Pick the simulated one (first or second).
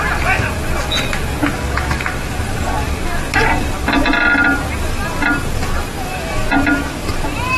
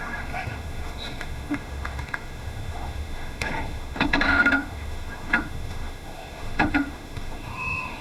second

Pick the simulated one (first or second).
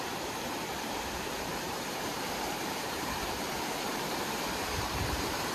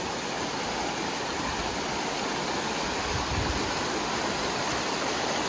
first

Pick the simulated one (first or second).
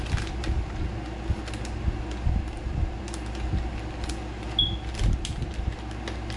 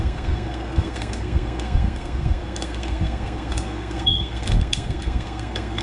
second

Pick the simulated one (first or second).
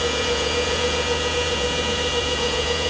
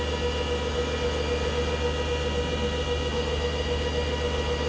first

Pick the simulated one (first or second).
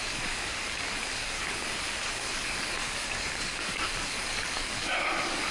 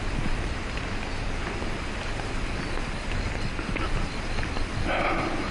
first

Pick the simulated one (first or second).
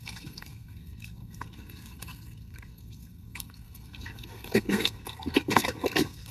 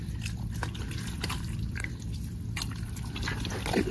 first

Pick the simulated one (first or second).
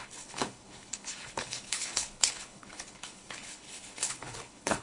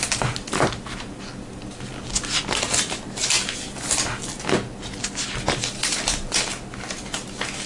first